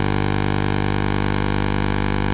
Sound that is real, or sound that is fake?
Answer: real